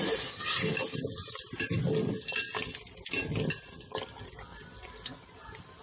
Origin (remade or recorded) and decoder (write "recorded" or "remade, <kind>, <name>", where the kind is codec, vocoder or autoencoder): recorded